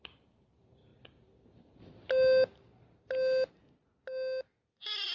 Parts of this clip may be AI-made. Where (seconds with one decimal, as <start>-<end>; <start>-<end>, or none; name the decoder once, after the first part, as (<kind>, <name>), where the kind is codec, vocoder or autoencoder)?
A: none